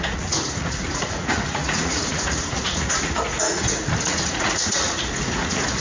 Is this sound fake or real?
fake